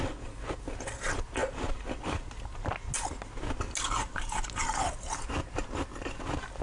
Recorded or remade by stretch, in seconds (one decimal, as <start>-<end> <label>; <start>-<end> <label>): 0.0-6.6 recorded